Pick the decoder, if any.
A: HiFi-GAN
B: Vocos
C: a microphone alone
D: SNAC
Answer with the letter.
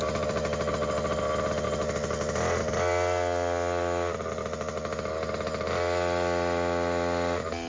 C